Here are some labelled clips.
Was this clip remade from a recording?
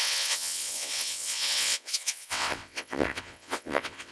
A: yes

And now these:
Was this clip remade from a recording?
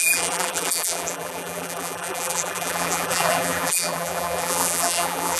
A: yes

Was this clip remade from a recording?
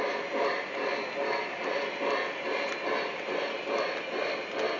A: no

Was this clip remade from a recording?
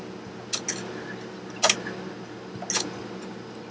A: no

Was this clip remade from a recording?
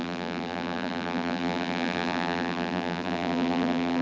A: yes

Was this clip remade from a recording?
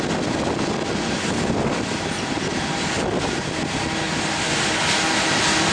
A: no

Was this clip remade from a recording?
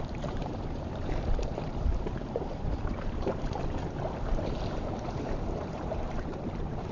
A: yes